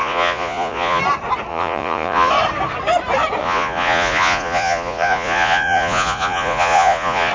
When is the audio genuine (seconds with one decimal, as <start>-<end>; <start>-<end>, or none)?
1.0-1.5; 2.3-3.4